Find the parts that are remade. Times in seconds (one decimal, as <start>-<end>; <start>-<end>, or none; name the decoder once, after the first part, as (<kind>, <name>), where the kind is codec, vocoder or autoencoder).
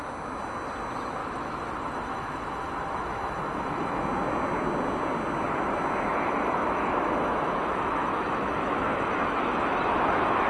1.2-4.0 (autoencoder, DAC-VAE); 6.1-10.5